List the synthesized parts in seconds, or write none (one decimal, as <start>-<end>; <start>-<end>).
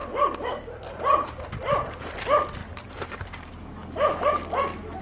2.6-3.5